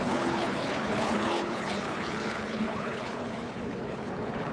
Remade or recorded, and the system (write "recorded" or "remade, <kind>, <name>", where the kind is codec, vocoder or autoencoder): remade, codec, HILCodec